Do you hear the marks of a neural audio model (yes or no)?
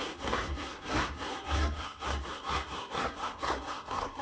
yes